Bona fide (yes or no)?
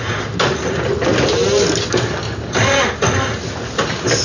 yes